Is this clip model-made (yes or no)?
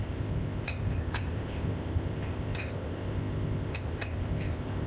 yes